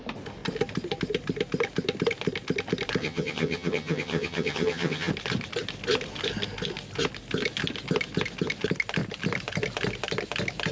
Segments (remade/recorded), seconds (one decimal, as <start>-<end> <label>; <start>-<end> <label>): 0.0-3.0 recorded; 3.0-5.1 remade; 5.1-10.7 recorded